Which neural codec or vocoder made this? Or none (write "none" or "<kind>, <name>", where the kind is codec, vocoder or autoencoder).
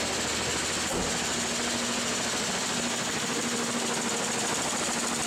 none